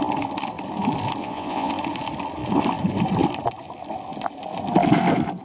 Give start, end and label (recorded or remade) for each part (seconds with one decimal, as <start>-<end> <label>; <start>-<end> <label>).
0.0-1.2 recorded; 1.2-1.7 remade; 1.7-5.4 recorded

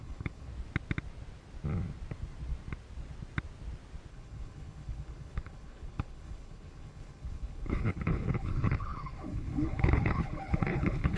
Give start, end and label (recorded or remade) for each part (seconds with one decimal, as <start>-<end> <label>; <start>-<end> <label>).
0.0-0.5 remade; 0.5-4.1 recorded; 4.1-11.2 remade

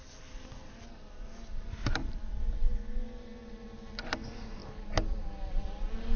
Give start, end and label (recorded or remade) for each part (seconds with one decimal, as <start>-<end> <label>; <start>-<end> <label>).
0.0-6.2 recorded

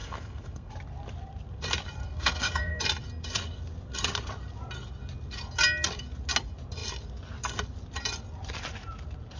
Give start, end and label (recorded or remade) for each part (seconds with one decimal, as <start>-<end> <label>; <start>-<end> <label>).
0.0-0.7 remade; 0.7-2.0 recorded; 2.0-2.8 remade; 2.8-9.4 recorded